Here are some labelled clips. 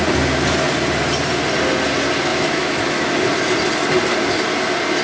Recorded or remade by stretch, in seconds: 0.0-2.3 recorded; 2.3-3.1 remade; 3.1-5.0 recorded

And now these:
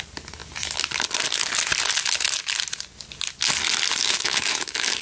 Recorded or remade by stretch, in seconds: 0.0-4.0 recorded; 4.0-5.0 remade

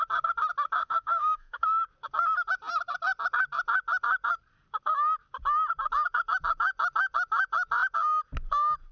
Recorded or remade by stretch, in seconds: 0.0-0.8 recorded; 0.8-1.8 remade; 1.8-8.9 recorded

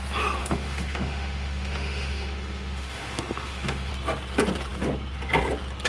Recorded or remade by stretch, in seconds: 0.0-0.4 recorded; 0.4-3.9 remade; 3.9-5.9 recorded

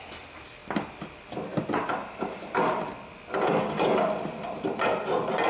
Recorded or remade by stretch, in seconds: 0.0-5.5 recorded

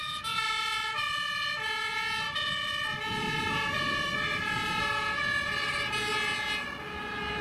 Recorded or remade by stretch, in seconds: 0.0-7.4 recorded

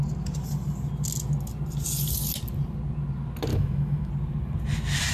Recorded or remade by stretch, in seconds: 0.0-3.5 recorded; 3.5-4.1 remade; 4.1-5.1 recorded